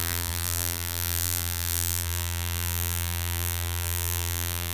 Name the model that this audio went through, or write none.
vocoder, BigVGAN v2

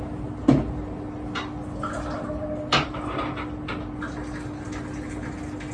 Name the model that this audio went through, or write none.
none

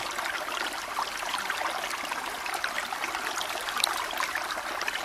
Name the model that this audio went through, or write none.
none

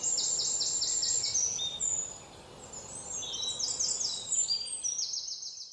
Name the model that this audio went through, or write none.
none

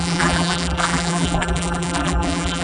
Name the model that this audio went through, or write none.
vocoder, BigVGAN v2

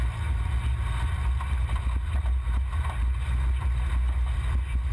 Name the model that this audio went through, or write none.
none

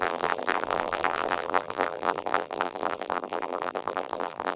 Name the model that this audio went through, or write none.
vocoder, BigVGAN v2